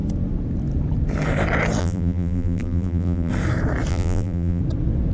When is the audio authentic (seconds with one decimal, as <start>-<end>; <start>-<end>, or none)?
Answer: 0.0-1.8; 3.3-3.9; 4.6-5.1